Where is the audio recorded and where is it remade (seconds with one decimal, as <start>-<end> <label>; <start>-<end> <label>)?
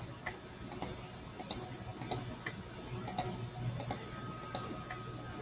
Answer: 0.0-5.4 recorded